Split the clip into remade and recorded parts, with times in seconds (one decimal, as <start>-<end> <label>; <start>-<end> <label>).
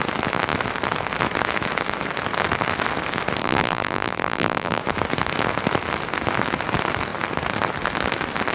0.0-3.4 recorded; 3.4-4.8 remade; 4.8-8.5 recorded